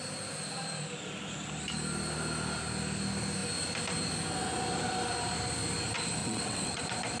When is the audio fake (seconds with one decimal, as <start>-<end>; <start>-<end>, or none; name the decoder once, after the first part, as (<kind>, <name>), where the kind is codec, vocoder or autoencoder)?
6.2-6.8 (vocoder, WaveNeXt)